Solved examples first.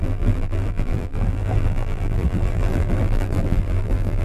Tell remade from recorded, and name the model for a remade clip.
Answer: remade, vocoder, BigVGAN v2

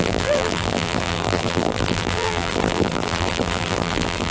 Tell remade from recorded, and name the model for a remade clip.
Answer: remade, vocoder, BigVGAN v2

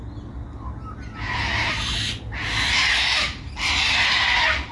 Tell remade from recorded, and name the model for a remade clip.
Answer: recorded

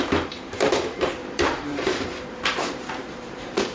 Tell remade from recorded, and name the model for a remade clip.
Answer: remade, vocoder, BigVGAN v2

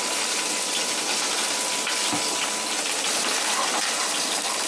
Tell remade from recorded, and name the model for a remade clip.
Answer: remade, vocoder, BigVGAN v2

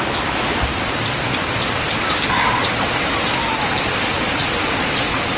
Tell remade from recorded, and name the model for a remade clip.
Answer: recorded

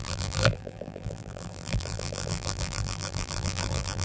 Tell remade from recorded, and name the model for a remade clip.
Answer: remade, vocoder, BigVGAN v2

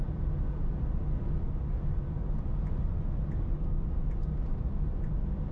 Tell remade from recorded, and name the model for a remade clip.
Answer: recorded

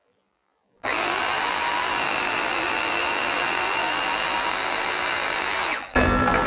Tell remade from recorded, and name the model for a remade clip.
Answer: remade, vocoder, BigVGAN v2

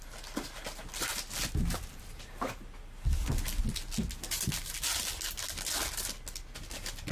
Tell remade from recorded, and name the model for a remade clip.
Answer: recorded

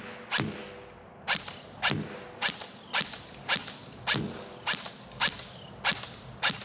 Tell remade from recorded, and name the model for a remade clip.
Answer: recorded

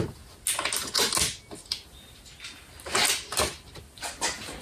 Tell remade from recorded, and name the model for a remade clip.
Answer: recorded